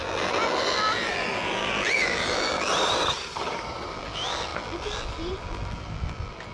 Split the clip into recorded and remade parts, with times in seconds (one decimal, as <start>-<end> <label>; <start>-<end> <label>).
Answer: 0.0-2.7 remade; 2.7-3.9 recorded; 3.9-6.5 remade